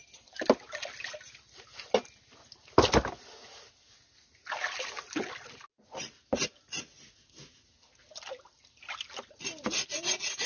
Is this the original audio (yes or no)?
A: yes